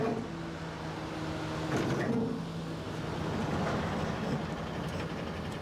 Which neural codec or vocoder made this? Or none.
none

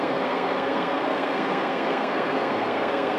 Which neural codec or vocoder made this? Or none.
codec, SNAC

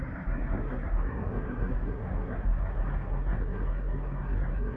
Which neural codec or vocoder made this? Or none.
codec, SNAC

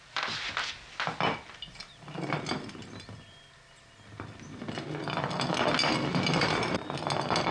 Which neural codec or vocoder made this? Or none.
none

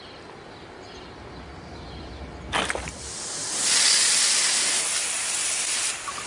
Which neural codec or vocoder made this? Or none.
none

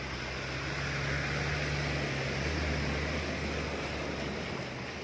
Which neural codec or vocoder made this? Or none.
none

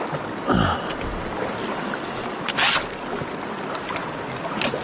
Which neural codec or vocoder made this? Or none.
none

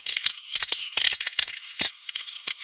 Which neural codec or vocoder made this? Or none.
codec, SNAC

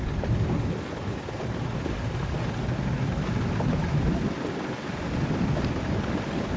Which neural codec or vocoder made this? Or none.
none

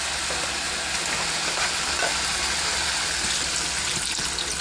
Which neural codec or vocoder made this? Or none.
none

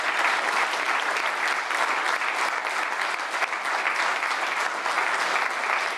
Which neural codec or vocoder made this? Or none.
none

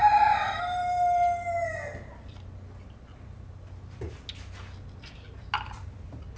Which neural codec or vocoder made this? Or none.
none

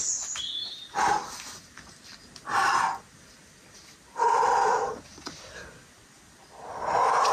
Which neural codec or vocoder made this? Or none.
none